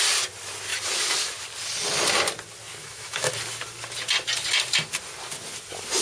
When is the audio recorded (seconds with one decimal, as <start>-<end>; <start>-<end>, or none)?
0.0-2.8; 3.3-6.0